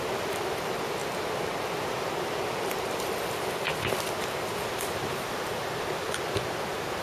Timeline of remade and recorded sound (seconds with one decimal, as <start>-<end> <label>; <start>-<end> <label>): 0.0-7.0 recorded